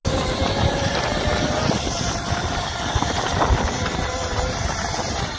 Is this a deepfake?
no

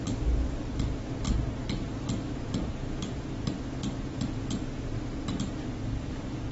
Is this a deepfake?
no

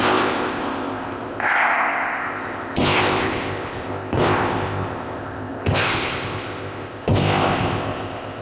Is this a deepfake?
yes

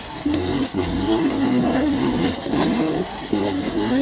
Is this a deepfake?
yes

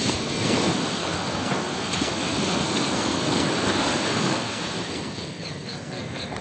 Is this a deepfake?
yes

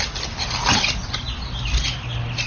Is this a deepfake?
no